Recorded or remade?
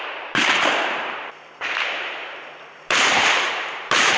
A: remade